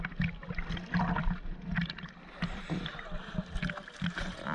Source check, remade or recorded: recorded